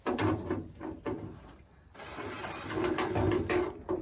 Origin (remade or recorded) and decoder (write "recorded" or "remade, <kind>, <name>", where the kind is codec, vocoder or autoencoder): recorded